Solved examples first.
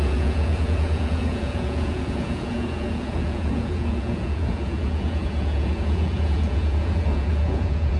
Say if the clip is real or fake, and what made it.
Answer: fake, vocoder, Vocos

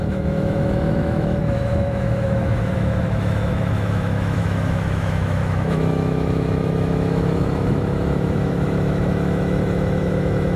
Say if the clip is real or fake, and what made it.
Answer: fake, autoencoder, DAC-VAE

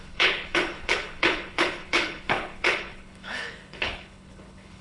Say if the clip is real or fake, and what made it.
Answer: fake, codec, HILCodec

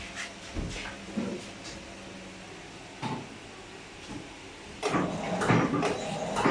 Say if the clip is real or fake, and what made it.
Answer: real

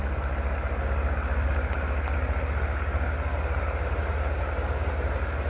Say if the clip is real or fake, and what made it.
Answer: real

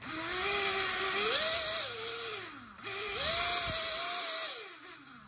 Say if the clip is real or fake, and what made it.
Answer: real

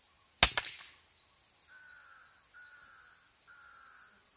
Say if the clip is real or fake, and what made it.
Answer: real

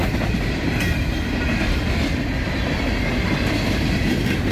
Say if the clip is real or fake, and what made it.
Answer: real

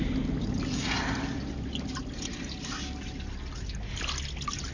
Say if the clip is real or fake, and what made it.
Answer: real